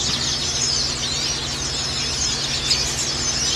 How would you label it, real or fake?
real